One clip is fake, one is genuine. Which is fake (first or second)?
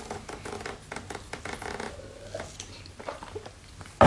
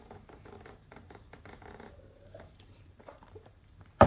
second